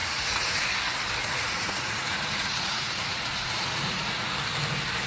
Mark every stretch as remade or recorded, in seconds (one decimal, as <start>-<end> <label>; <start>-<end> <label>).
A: 0.0-0.6 remade; 0.6-1.2 recorded; 1.2-4.3 remade; 4.3-5.1 recorded